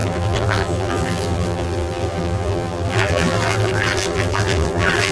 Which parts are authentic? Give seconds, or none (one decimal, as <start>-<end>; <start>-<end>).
none